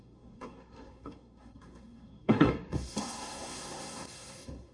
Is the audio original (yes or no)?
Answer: no